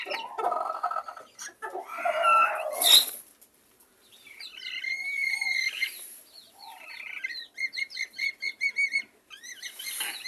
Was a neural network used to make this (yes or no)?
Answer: no